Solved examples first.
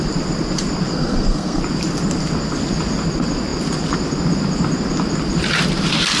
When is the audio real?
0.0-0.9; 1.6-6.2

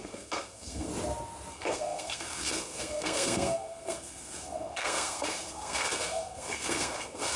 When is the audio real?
0.9-1.5

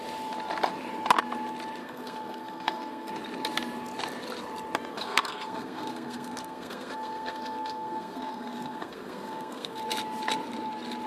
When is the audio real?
0.0-1.8; 3.1-4.9; 9.8-11.1

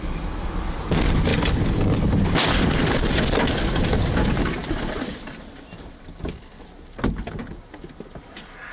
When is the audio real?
0.0-8.7

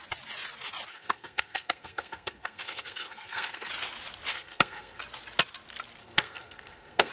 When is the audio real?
0.0-0.9; 3.7-4.3; 5.0-6.0

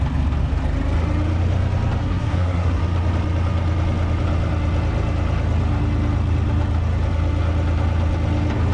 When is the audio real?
0.0-2.0; 2.8-8.7

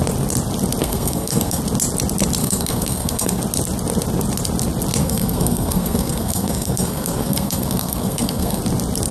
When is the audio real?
0.0-0.8; 1.6-2.4; 3.4-5.0; 8.6-9.1

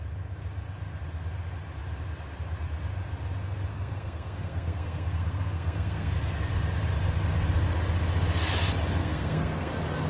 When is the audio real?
0.0-3.7; 6.1-9.0; 9.7-10.1